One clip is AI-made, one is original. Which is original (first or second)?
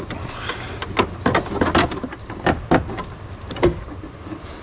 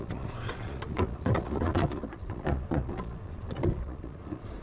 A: first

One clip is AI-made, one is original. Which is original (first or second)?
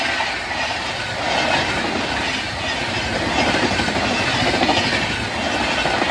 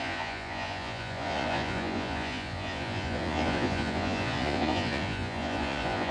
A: first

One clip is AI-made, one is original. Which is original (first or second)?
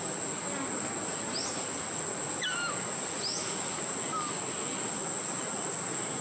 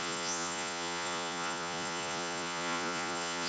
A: first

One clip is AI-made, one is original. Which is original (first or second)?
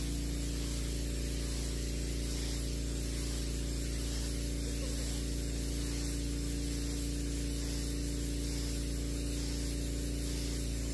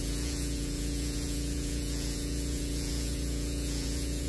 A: first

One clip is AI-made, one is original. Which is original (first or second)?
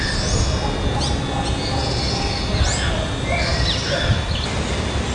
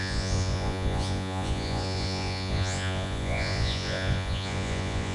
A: first